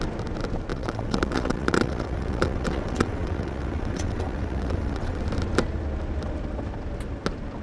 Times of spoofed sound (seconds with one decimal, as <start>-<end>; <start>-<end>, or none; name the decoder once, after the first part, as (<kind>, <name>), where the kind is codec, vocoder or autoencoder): 0.7-5.2 (vocoder, WaveNeXt)